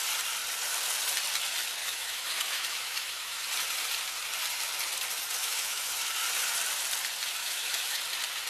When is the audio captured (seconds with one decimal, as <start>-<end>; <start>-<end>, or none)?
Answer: 0.0-1.8; 3.5-5.4; 6.0-7.4; 8.0-8.5